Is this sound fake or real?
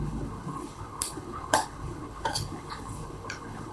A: fake